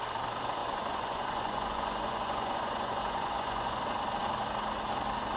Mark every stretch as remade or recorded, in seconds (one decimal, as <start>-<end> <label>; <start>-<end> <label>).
0.0-0.6 recorded; 0.6-3.8 remade; 3.8-5.4 recorded